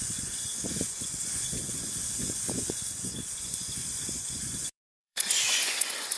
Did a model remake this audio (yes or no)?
yes